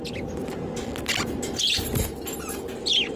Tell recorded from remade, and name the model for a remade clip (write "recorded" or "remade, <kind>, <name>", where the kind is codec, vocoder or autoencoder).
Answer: recorded